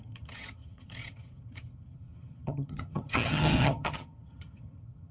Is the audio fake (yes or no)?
yes